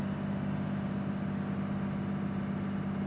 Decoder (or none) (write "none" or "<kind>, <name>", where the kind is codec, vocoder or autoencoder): none